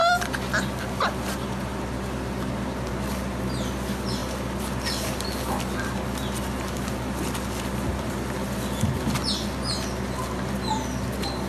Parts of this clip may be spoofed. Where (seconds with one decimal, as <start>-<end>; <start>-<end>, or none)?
none